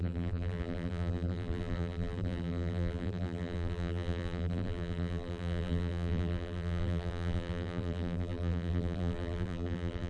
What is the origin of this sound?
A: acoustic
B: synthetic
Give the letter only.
B